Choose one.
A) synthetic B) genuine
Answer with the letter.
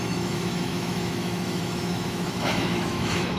A